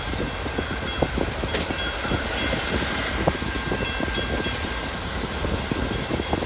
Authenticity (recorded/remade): recorded